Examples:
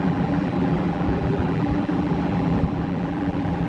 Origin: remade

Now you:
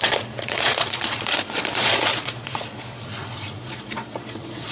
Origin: remade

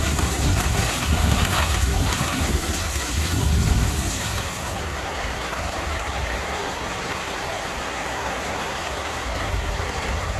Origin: remade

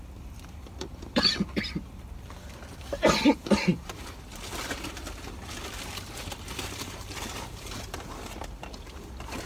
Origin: remade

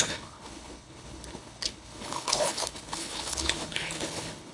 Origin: remade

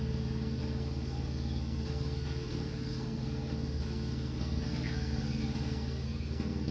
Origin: remade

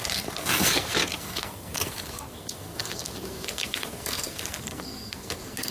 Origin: remade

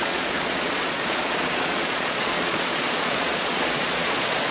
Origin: remade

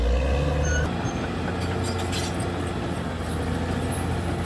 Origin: recorded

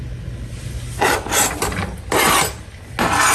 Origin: recorded